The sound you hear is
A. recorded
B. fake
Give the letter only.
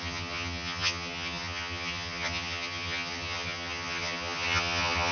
B